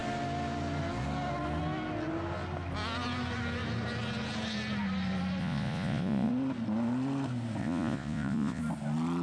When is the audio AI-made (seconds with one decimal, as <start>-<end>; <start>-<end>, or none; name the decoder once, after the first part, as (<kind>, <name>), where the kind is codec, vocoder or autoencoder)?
5.4-6.3 (vocoder, Vocos); 7.6-8.6